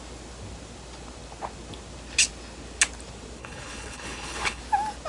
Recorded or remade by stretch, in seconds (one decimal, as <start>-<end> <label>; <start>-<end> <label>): 0.0-3.4 recorded; 3.4-4.6 remade; 4.6-5.1 recorded